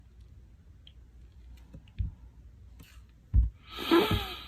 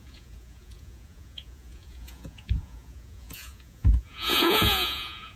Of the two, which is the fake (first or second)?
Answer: second